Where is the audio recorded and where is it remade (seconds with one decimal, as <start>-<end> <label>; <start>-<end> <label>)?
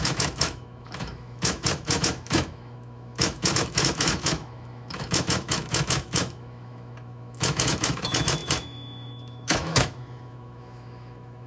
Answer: 0.0-11.5 remade